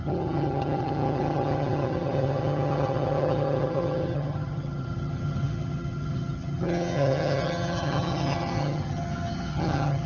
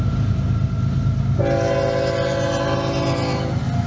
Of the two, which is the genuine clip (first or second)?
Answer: second